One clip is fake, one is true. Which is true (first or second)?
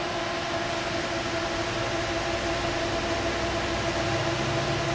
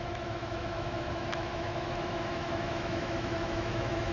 first